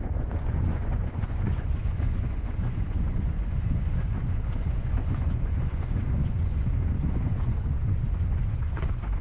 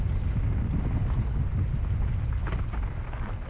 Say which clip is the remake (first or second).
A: first